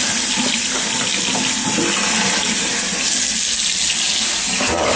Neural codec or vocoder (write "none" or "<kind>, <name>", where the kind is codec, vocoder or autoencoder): none